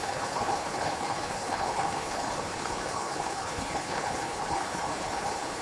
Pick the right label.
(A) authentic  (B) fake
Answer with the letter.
B